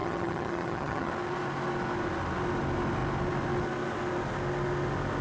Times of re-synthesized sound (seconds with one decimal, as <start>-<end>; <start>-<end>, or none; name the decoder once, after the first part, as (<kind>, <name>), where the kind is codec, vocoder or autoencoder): 0.0-1.1 (vocoder, HiFi-GAN)